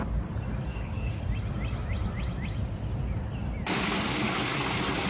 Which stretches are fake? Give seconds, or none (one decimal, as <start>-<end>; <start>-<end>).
0.7-1.2